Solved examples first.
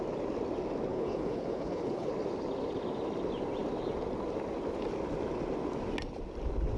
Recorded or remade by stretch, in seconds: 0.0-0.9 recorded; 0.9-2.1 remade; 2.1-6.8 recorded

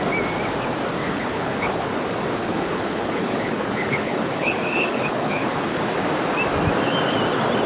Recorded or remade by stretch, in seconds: 0.0-1.0 recorded; 1.0-1.9 remade; 1.9-2.4 recorded; 2.4-5.8 remade; 5.8-7.7 recorded

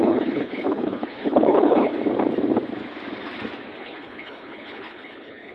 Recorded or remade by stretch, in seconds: 0.0-1.9 remade; 1.9-3.8 recorded; 3.8-5.5 remade

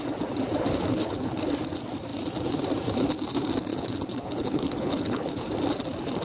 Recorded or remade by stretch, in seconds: 0.0-0.7 recorded; 0.7-1.5 remade; 1.5-3.7 recorded; 3.7-5.4 remade; 5.4-6.2 recorded

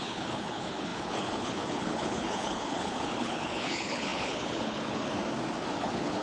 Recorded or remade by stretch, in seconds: 0.0-5.2 remade; 5.2-5.8 recorded; 5.8-6.2 remade

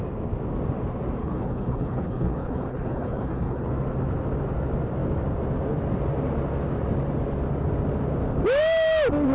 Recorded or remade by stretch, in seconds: 0.0-1.2 recorded; 1.2-3.7 remade; 3.7-9.3 recorded